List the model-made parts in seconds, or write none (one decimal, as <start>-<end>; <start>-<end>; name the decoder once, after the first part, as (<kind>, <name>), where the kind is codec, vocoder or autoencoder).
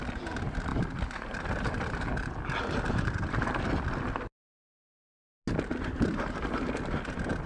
none